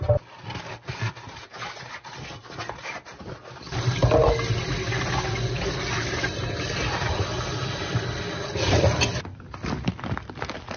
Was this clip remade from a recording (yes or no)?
no